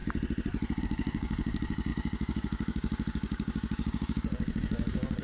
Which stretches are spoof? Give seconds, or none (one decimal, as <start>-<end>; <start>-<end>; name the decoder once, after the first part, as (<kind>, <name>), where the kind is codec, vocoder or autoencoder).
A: 0.8-5.2 (codec, DAC)